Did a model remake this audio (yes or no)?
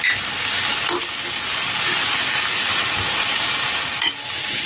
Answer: no